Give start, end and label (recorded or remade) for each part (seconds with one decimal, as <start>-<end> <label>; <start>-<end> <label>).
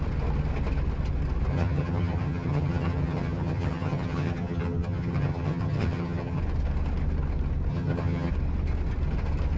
0.0-1.5 recorded; 1.5-6.4 remade; 6.4-7.7 recorded; 7.7-8.3 remade; 8.3-9.6 recorded